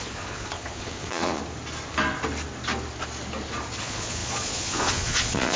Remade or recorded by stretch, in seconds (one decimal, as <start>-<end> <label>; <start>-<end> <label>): 0.0-1.4 remade; 1.4-3.8 recorded; 3.8-5.6 remade